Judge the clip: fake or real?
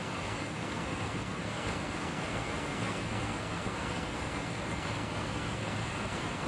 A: fake